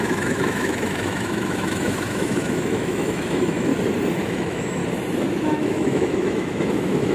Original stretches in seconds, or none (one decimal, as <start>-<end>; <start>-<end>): 3.7-4.2; 4.8-5.3